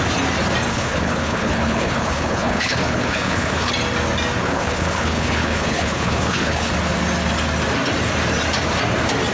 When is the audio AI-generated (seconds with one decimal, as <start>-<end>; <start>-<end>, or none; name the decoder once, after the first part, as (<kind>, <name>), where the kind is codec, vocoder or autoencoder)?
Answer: 0.7-3.7 (codec, HILCodec); 4.4-6.7